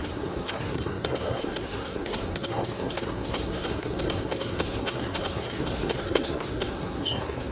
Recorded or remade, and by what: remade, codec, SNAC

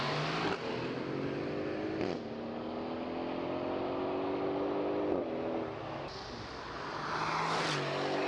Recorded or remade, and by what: recorded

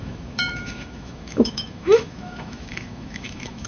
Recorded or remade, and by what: remade, autoencoder, DAC-VAE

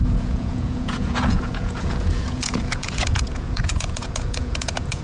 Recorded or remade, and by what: remade, vocoder, Vocos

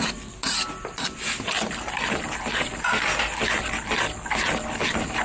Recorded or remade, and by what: recorded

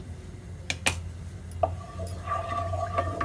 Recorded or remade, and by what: recorded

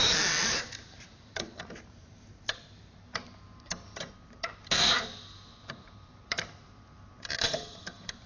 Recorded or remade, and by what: remade, vocoder, BigVGAN v2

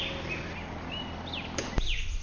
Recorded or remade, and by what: recorded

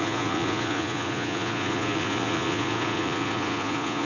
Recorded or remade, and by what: remade, vocoder, Vocos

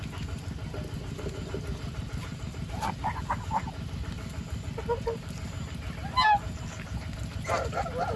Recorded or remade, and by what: recorded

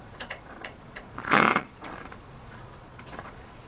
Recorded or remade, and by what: remade, vocoder, Vocos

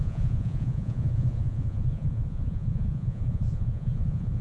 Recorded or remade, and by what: remade, vocoder, Vocos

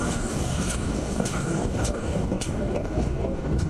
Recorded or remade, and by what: remade, codec, DAC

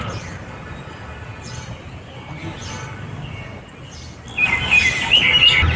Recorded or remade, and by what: recorded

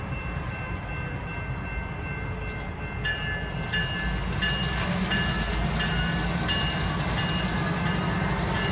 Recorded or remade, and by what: recorded